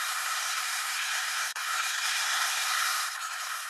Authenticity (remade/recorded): remade